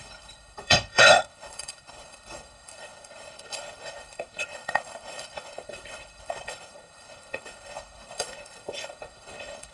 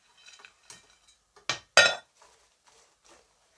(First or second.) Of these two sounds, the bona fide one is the second